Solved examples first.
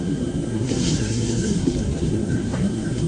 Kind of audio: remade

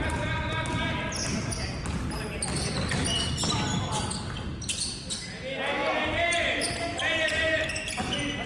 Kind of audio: recorded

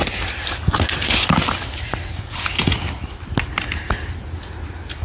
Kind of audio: recorded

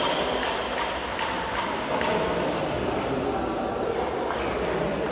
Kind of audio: recorded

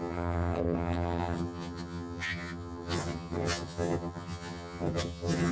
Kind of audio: remade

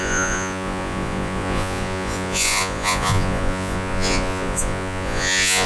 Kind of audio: remade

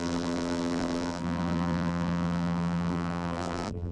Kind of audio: remade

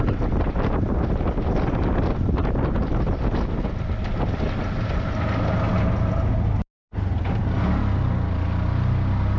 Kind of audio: recorded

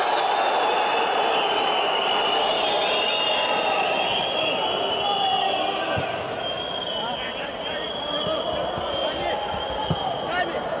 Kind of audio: recorded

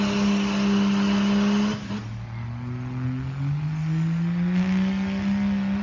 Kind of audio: recorded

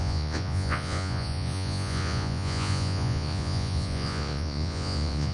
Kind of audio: remade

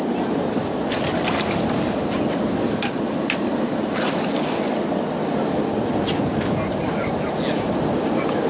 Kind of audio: recorded